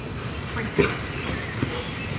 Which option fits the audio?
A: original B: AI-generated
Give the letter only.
A